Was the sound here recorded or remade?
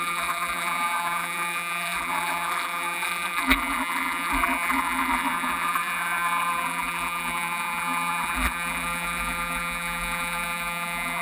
remade